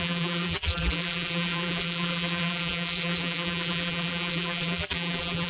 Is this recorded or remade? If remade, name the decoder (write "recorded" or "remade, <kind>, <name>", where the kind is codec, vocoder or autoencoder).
remade, vocoder, BigVGAN v2